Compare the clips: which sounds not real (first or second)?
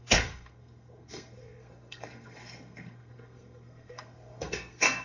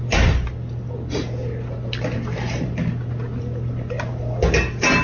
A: first